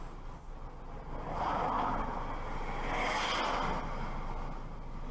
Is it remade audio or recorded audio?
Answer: recorded